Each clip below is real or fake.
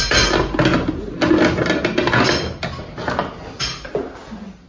real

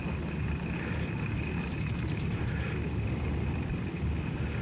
real